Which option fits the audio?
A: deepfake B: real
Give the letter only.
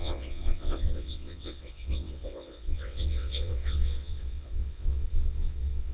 A